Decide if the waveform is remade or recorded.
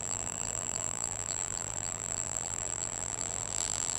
remade